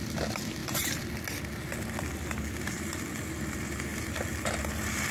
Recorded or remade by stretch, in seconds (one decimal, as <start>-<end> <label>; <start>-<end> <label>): 0.0-0.6 remade; 0.6-3.5 recorded; 3.5-5.1 remade